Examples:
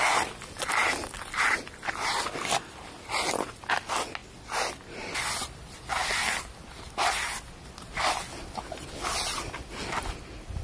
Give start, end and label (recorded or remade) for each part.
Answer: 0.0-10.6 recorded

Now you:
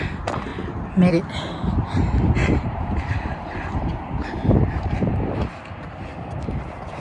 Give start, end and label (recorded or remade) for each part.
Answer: 0.0-2.4 recorded; 2.4-6.1 remade; 6.1-7.0 recorded

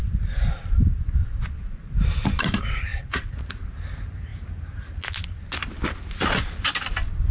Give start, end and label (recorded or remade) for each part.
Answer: 0.0-2.2 recorded; 2.2-2.9 remade; 2.9-3.5 recorded; 3.5-4.3 remade; 4.3-7.3 recorded

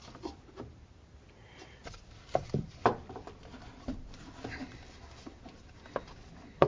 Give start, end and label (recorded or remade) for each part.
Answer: 0.0-1.8 recorded; 1.8-5.2 remade; 5.2-6.7 recorded